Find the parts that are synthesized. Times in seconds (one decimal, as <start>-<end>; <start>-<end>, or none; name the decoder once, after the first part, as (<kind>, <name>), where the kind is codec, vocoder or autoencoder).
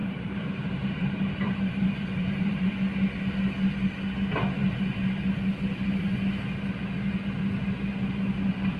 0.0-2.7 (vocoder, BigVGAN v2)